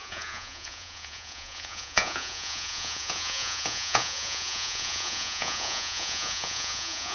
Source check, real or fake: fake